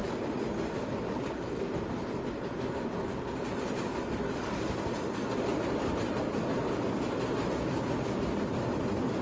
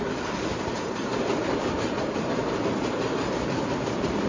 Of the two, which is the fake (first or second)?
second